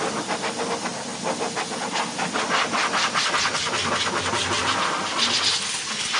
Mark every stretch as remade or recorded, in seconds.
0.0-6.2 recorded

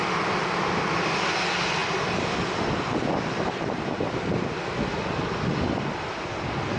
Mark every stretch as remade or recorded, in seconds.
0.0-6.8 recorded

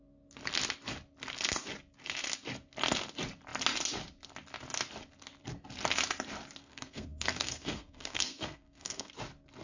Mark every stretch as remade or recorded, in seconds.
0.0-6.6 recorded; 6.6-9.1 remade; 9.1-9.6 recorded

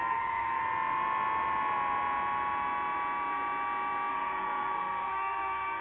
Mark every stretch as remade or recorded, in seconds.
0.0-0.6 remade; 0.6-4.1 recorded; 4.1-5.8 remade

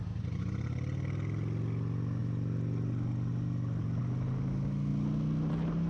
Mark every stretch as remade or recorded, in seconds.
0.0-5.9 recorded

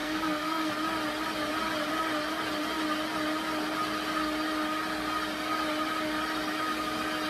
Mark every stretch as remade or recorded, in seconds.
0.0-0.7 remade; 0.7-7.3 recorded

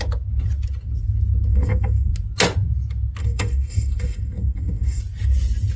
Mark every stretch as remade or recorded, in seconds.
0.0-1.5 recorded; 1.5-2.1 remade; 2.1-3.2 recorded; 3.2-5.0 remade; 5.0-5.8 recorded

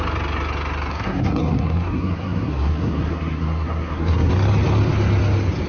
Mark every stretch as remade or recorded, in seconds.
0.0-0.9 recorded; 0.9-4.3 remade; 4.3-5.7 recorded